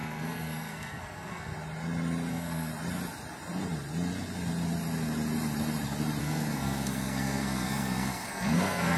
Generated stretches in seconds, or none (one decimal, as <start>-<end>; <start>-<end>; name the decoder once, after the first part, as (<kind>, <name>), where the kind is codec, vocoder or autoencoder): 0.0-1.5 (codec, SNAC); 2.3-2.7; 6.2-9.0